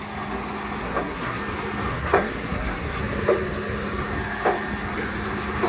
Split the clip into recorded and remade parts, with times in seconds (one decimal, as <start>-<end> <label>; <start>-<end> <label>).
0.0-0.8 recorded; 0.8-1.4 remade; 1.4-1.9 recorded; 1.9-3.0 remade; 3.0-5.7 recorded